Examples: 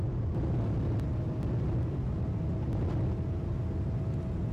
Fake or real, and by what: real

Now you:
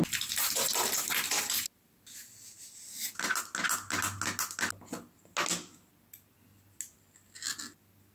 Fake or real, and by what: real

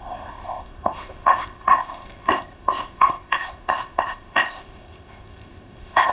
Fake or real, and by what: fake, codec, ZipCodec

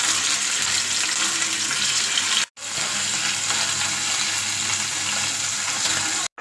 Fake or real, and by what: real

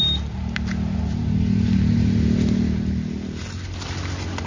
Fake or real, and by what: real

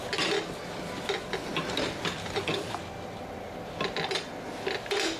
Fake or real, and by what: real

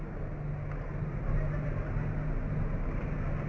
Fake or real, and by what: real